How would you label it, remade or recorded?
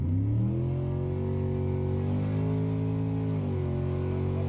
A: recorded